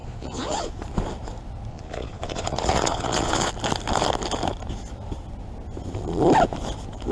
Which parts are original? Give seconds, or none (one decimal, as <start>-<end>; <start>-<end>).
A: 0.8-1.7; 3.5-7.1